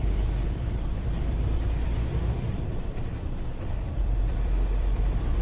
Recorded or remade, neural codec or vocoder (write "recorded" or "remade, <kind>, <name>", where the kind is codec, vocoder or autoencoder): remade, vocoder, BigVGAN v2